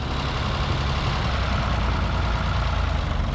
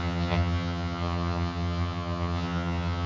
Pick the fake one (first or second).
second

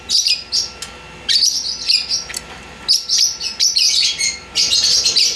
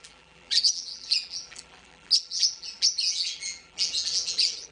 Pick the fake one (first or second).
second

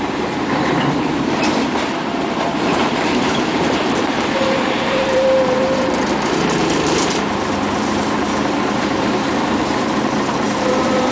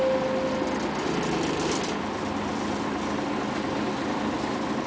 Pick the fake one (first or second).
first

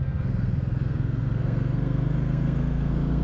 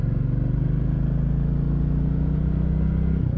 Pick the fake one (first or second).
first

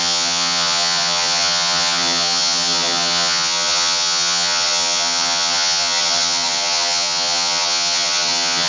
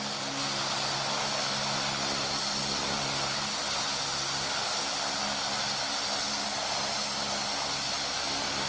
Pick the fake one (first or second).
first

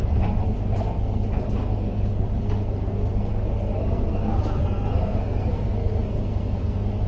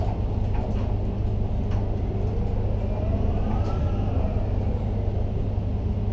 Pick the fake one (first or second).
first